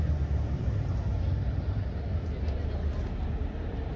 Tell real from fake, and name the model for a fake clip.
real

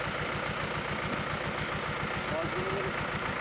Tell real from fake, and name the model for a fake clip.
real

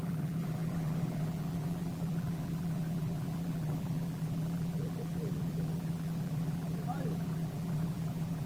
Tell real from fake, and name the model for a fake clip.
fake, vocoder, BigVGAN v2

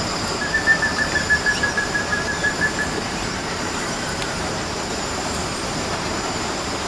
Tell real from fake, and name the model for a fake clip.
fake, vocoder, BigVGAN v2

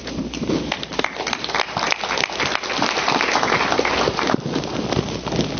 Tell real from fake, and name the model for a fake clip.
real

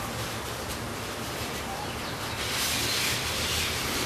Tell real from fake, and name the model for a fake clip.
fake, vocoder, BigVGAN v2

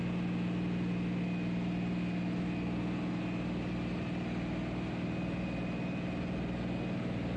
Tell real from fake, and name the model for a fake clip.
real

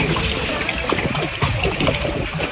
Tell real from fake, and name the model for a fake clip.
fake, vocoder, BigVGAN v2